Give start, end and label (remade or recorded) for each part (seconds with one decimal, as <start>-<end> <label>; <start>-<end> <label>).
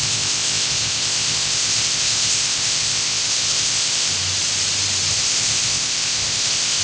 0.0-4.1 remade; 4.1-5.1 recorded; 5.1-6.8 remade